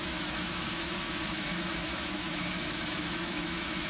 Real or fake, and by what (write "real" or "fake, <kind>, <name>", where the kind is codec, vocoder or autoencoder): fake, autoencoder, DAC-VAE